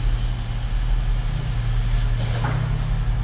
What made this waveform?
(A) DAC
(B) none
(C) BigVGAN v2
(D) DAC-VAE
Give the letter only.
B